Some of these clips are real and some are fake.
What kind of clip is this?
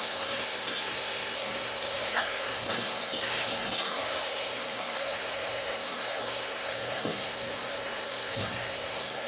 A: fake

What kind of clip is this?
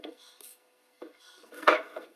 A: fake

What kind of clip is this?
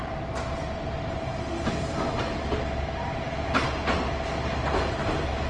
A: real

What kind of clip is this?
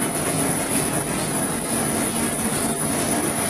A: real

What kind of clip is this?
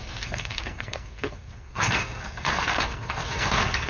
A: fake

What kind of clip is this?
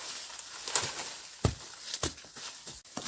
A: real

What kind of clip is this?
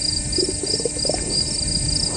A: real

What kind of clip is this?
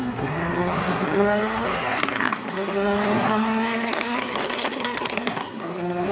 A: fake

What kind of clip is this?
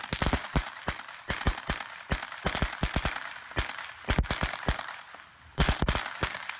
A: real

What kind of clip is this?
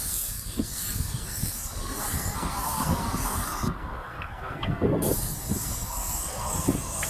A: fake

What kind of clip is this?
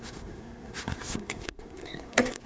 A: fake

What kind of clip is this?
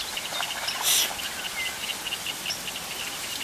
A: real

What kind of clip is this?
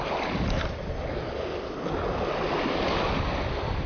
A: real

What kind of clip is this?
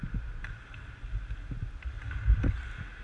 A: real